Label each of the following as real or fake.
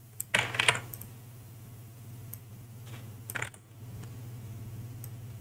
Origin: real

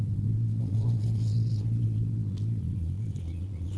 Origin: fake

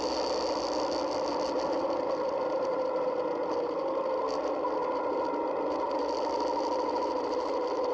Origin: real